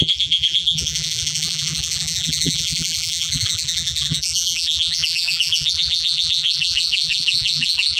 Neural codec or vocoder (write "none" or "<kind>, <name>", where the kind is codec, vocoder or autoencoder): vocoder, BigVGAN v2